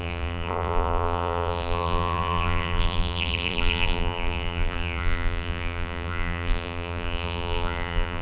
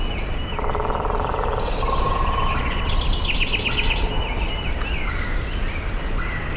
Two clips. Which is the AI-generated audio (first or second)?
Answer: first